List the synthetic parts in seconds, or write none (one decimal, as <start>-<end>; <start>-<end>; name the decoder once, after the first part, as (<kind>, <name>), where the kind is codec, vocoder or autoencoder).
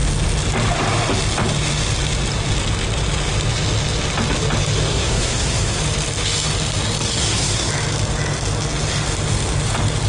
4.9-5.8 (codec, SNAC); 7.2-7.7